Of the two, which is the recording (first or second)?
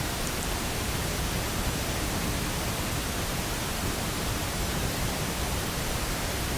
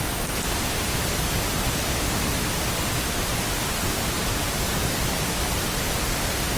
second